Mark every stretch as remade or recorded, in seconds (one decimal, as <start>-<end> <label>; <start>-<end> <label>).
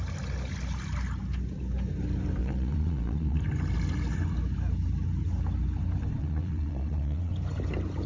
0.0-2.4 recorded; 2.4-3.4 remade; 3.4-6.2 recorded; 6.2-7.3 remade; 7.3-8.1 recorded